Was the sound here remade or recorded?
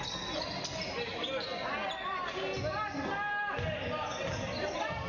recorded